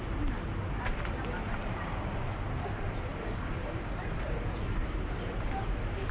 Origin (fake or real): fake